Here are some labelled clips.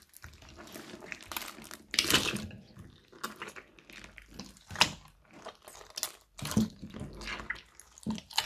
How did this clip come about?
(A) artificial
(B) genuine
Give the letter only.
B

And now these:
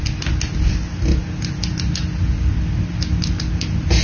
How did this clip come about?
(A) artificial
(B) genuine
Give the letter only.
B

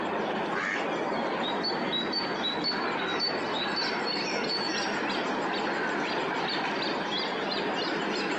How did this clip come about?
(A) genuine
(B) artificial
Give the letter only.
A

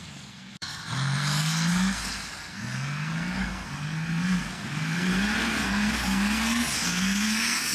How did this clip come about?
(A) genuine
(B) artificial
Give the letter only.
B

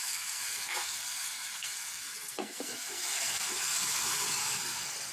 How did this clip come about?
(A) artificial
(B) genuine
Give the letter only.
A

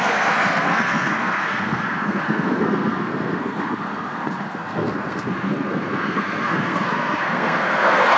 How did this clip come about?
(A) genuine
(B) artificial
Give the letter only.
B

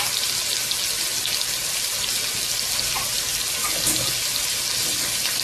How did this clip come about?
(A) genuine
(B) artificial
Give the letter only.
A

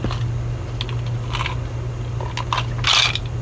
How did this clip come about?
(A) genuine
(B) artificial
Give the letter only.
A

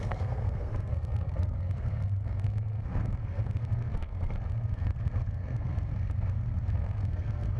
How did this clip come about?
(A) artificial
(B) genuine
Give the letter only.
A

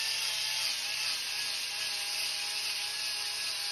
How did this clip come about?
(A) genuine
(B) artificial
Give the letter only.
A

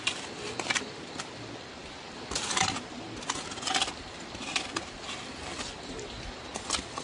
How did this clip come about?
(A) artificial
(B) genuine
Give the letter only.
B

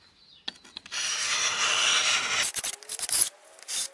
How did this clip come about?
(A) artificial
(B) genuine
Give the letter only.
B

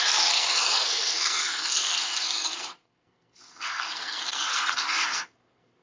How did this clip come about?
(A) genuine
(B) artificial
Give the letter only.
B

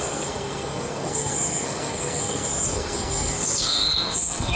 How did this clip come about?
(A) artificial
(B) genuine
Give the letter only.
A